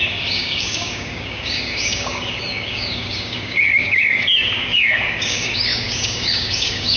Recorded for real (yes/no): no